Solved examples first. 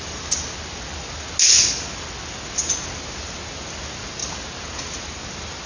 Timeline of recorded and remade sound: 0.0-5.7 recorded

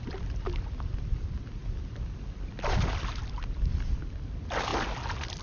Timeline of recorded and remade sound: 0.0-5.4 recorded

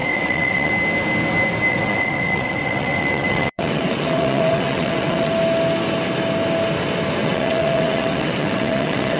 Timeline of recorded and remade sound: 0.0-0.7 remade; 0.7-1.7 recorded; 1.7-5.3 remade; 5.3-7.2 recorded; 7.2-9.2 remade

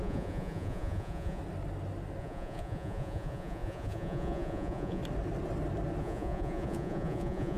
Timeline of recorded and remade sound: 0.0-1.4 remade; 1.4-2.2 recorded; 2.2-5.0 remade; 5.0-6.0 recorded; 6.0-7.6 remade

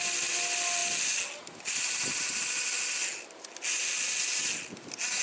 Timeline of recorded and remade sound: 0.0-5.2 recorded

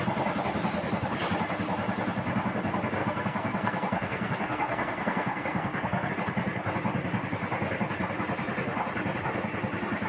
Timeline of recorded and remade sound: 0.0-3.0 recorded; 3.0-6.1 remade; 6.1-10.1 recorded